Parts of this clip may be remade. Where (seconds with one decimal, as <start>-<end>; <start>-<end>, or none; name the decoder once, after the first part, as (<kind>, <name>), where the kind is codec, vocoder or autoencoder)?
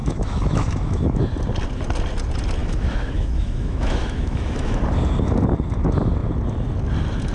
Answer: 0.0-1.2 (autoencoder, DAC-VAE); 2.6-4.8